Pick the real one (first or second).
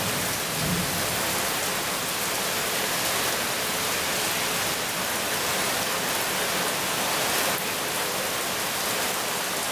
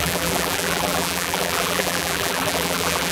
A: first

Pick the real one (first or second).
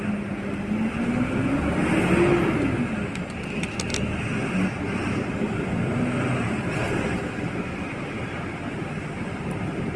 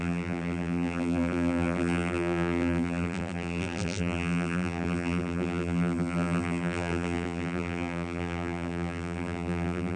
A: first